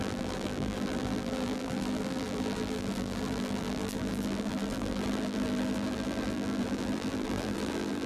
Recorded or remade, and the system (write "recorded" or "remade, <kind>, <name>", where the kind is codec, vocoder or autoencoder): remade, vocoder, BigVGAN v2